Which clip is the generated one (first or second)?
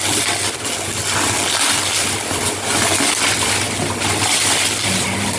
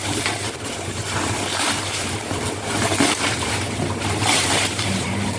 second